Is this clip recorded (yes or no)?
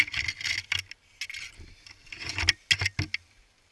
yes